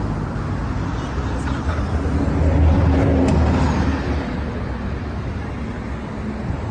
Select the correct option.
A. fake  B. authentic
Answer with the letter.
B